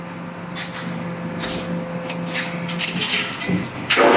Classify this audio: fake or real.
real